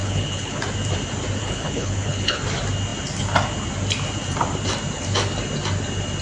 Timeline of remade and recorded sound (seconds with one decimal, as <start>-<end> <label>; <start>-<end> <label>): 0.0-0.6 remade; 0.6-1.4 recorded; 1.4-2.4 remade; 2.4-6.2 recorded